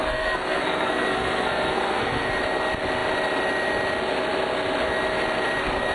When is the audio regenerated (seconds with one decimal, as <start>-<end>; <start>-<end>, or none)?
0.0-2.3